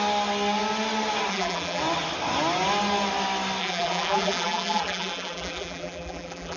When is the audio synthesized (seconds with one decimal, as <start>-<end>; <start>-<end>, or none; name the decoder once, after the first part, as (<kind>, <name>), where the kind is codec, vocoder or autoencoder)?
1.3-1.8 (vocoder, BigVGAN v2); 3.6-6.6